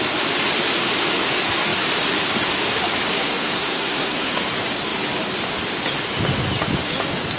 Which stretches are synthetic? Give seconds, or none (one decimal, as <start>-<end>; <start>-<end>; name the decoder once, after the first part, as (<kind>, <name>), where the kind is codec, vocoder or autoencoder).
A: 3.1-4.4 (codec, SNAC)